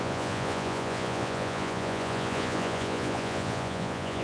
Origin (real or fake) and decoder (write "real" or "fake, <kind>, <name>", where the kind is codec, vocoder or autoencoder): fake, vocoder, Vocos